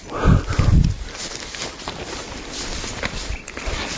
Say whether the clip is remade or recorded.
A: recorded